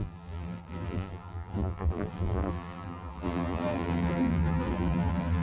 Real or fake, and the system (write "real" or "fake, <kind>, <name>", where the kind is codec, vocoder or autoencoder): fake, vocoder, BigVGAN v2